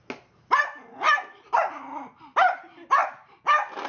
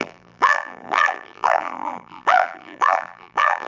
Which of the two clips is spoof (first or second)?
second